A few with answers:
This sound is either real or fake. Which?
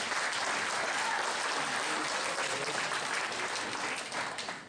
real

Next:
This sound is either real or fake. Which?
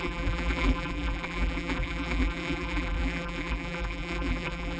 fake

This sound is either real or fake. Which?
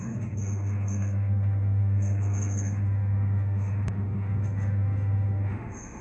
fake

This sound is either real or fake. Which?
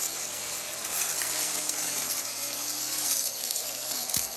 fake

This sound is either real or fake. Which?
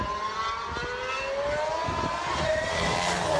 real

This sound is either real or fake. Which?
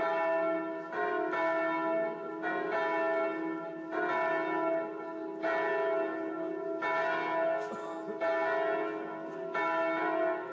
real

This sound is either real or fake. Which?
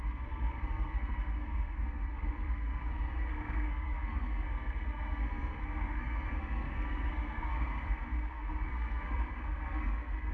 fake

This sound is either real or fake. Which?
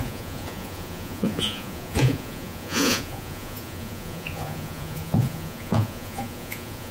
fake